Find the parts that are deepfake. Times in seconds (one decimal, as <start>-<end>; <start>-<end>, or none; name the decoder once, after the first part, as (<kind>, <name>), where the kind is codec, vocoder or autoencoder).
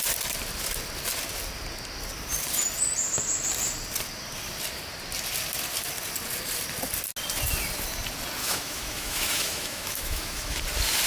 8.4-10.6 (autoencoder, DAC-VAE)